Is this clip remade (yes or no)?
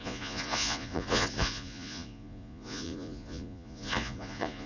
yes